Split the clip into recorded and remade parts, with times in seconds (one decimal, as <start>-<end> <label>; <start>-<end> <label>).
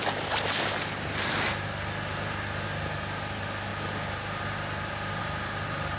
0.0-6.0 recorded